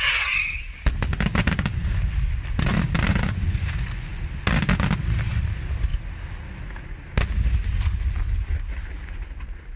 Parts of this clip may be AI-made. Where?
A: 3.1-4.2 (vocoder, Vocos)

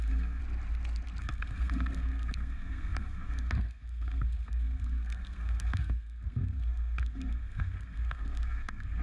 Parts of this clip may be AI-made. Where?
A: 0.0-0.4 (codec, SNAC); 1.2-9.0

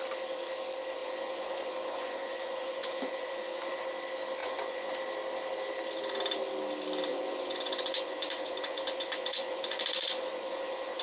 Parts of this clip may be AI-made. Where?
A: 1.0-3.8 (vocoder, Vocos); 4.4-4.9; 7.1-11.0